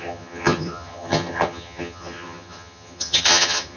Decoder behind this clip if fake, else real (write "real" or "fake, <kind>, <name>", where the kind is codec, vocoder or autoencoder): fake, vocoder, HiFi-GAN